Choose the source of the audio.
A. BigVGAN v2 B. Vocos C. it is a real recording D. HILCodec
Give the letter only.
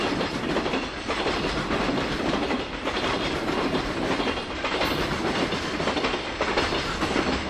A